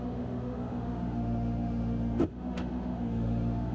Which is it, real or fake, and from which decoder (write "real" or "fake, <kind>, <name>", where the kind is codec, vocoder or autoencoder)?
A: fake, autoencoder, DAC-VAE